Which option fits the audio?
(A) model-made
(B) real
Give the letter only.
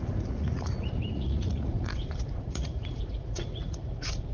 A